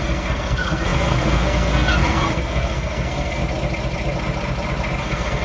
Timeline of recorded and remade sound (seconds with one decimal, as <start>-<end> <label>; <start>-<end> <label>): 0.0-3.4 remade; 3.4-5.0 recorded; 5.0-5.4 remade